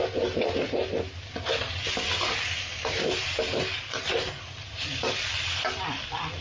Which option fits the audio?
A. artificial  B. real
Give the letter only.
A